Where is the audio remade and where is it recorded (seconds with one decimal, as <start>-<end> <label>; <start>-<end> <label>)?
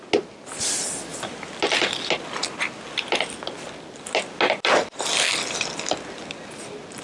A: 0.0-7.0 recorded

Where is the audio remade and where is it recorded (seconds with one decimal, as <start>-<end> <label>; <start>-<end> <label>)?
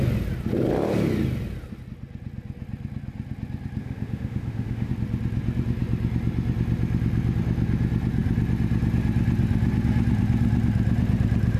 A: 0.0-3.8 recorded; 3.8-4.9 remade; 4.9-11.6 recorded